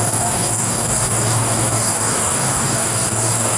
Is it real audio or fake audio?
fake